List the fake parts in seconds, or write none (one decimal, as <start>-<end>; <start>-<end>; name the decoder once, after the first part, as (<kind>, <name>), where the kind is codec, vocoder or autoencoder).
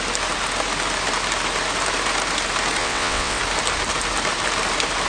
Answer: 2.8-3.4 (vocoder, WaveNeXt)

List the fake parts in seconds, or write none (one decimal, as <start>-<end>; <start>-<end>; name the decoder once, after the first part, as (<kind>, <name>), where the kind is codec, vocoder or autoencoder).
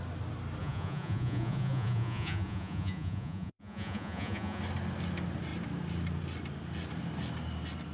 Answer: 0.6-4.6 (vocoder, Vocos)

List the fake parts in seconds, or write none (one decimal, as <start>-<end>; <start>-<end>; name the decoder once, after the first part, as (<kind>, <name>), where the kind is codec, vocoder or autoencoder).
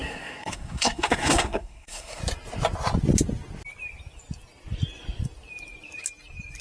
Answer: 0.0-2.2 (codec, SNAC)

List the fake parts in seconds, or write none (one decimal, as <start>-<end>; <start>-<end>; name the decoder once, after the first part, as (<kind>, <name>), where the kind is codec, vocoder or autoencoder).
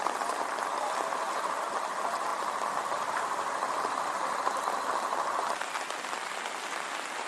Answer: none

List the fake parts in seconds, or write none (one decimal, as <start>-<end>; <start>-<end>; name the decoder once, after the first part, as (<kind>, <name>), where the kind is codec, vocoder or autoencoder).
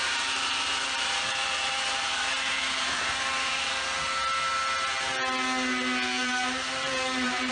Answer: 0.0-3.6 (vocoder, BigVGAN v2); 6.2-7.5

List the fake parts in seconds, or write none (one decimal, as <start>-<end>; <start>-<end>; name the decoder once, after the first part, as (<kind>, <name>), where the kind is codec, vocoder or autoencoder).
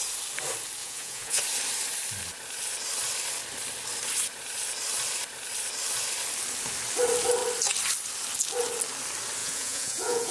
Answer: 0.8-1.4 (vocoder, Vocos); 9.4-10.3